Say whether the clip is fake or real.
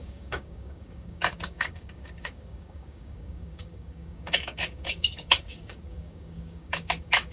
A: fake